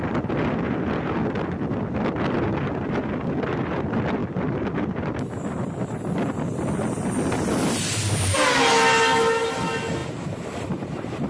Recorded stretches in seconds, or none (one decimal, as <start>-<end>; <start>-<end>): 0.0-10.0